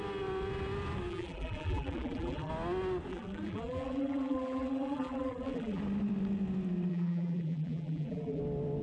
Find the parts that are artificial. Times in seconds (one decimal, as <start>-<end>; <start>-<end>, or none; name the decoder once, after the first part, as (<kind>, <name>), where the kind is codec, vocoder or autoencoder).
1.1-2.5 (vocoder, BigVGAN v2); 3.1-5.8; 6.9-8.4